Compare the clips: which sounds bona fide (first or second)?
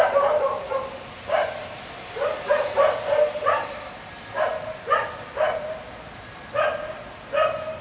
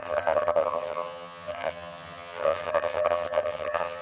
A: first